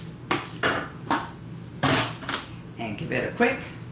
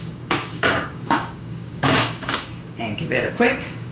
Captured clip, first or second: first